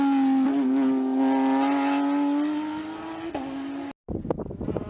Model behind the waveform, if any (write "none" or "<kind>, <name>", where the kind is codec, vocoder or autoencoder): none